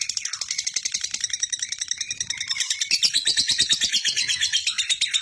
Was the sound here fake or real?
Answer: real